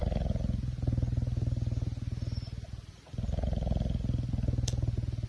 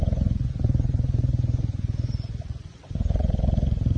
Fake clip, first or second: second